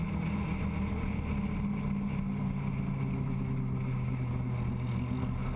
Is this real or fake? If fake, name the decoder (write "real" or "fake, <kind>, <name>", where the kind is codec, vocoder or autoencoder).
real